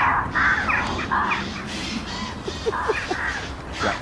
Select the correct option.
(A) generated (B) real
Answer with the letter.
B